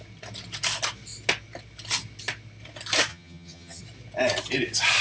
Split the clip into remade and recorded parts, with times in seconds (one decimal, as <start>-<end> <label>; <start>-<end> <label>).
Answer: 0.0-3.1 recorded; 3.1-3.8 remade; 3.8-5.0 recorded